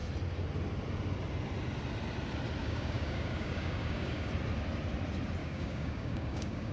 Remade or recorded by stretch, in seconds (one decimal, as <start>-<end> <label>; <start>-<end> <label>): 0.0-2.6 recorded; 2.6-4.3 remade; 4.3-5.4 recorded; 5.4-6.7 remade